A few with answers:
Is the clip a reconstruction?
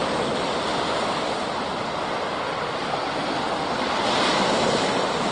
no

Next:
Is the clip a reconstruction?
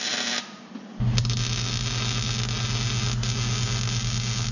no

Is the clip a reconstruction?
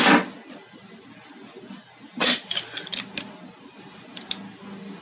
no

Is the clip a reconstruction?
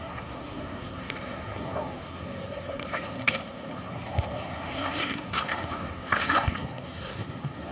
yes